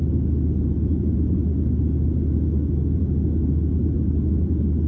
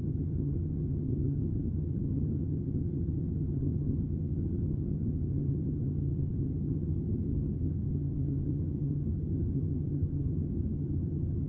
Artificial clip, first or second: second